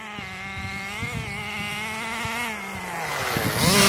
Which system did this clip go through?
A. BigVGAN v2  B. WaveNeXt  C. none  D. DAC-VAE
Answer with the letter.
C